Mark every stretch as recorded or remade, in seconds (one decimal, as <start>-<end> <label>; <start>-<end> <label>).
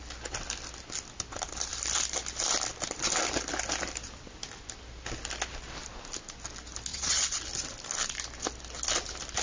0.0-6.9 recorded; 6.9-7.4 remade; 7.4-9.4 recorded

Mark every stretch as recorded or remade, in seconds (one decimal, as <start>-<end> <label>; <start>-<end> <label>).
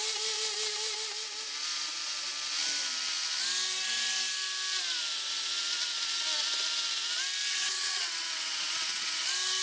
0.0-7.5 recorded; 7.5-9.2 remade; 9.2-9.6 recorded